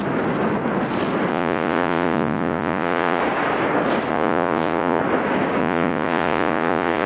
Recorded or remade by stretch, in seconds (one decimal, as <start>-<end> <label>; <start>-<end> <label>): 0.0-1.3 recorded; 1.3-3.2 remade; 3.2-4.1 recorded; 4.1-5.0 remade; 5.0-5.6 recorded; 5.6-7.1 remade